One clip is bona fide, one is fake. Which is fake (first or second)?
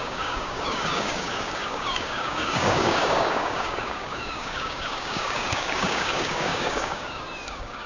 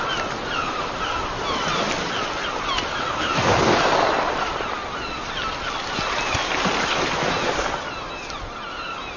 first